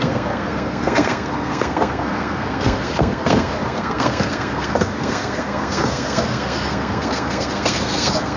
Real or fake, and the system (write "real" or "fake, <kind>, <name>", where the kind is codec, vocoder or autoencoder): fake, codec, SNAC